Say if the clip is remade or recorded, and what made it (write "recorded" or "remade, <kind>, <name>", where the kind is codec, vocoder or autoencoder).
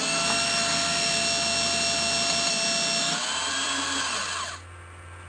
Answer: recorded